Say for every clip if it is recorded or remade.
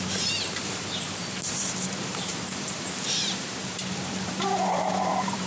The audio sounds remade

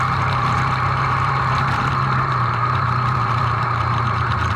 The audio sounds remade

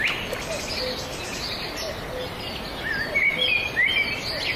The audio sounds recorded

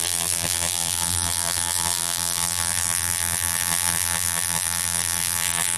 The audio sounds remade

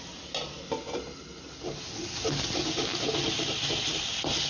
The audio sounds recorded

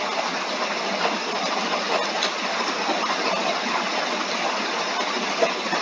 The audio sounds recorded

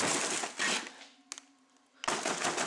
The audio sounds recorded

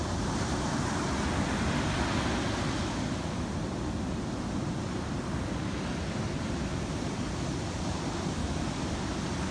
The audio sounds recorded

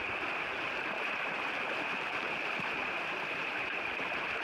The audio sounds remade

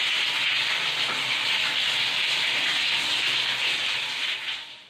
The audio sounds remade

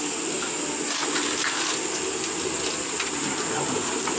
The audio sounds remade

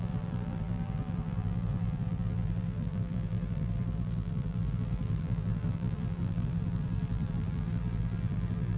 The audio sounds remade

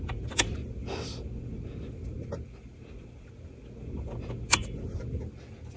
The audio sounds recorded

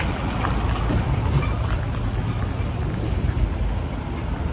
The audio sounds recorded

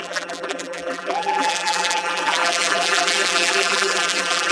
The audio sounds remade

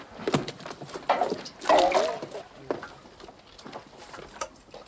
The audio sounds recorded